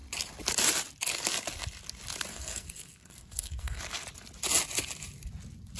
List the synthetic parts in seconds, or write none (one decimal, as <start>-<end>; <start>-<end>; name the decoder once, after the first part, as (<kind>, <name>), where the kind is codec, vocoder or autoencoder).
2.3-3.8 (codec, SNAC)